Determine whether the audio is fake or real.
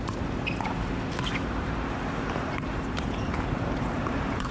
fake